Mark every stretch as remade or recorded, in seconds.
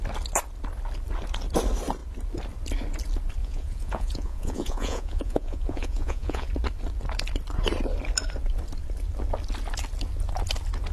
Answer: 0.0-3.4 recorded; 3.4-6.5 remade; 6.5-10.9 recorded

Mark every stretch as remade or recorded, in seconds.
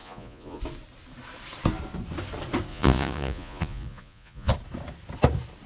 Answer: 0.0-0.6 remade; 0.6-2.7 recorded; 2.7-4.5 remade; 4.5-5.7 recorded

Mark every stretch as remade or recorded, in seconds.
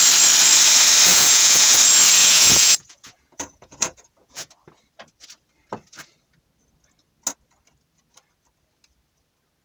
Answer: 0.0-1.1 recorded; 1.1-1.8 remade; 1.8-2.2 recorded; 2.2-4.5 remade; 4.5-9.6 recorded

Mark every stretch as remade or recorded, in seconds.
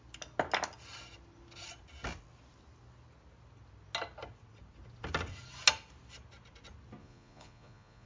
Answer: 0.0-7.0 recorded; 7.0-8.1 remade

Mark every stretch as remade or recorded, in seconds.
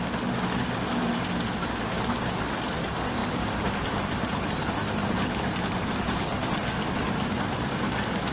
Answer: 0.0-8.3 recorded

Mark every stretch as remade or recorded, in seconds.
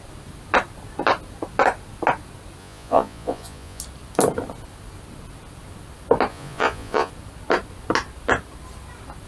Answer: 0.0-2.6 recorded; 2.6-3.8 remade; 3.8-6.3 recorded; 6.3-7.1 remade; 7.1-9.3 recorded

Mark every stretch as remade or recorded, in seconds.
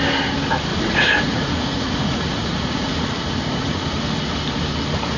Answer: 0.0-0.7 recorded; 0.7-3.8 remade; 3.8-5.2 recorded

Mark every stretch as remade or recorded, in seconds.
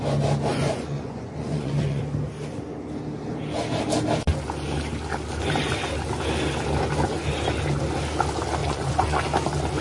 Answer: 0.0-0.5 recorded; 0.5-2.0 remade; 2.0-8.6 recorded; 8.6-9.2 remade; 9.2-9.8 recorded